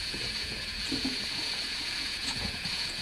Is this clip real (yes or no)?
no